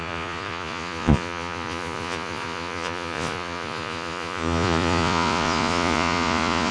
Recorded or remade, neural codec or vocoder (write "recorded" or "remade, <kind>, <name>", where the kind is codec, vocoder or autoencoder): remade, vocoder, Vocos